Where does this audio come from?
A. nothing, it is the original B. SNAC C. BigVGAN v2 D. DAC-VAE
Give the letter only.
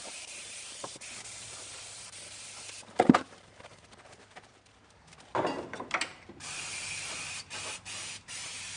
C